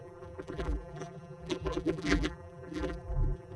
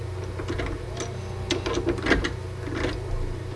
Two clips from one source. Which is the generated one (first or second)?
first